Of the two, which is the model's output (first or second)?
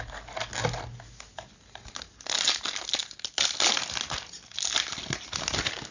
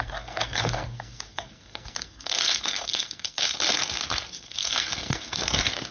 second